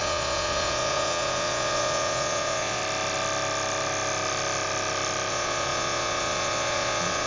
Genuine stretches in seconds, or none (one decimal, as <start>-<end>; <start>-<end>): 2.8-5.3